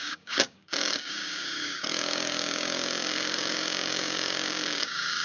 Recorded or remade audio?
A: remade